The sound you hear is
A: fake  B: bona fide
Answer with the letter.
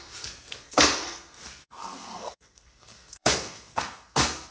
A